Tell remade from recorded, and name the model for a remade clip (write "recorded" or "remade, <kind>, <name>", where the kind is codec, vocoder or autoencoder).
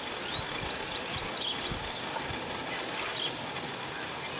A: recorded